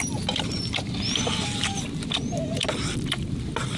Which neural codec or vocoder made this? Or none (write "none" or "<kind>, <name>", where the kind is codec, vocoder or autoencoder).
none